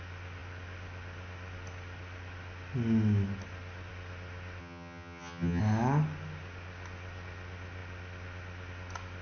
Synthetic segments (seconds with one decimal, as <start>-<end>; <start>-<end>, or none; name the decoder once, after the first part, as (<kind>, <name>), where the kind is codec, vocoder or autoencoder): 4.6-5.6 (vocoder, HiFi-GAN)